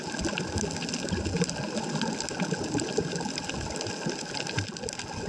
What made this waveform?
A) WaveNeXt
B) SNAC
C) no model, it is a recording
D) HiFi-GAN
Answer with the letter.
C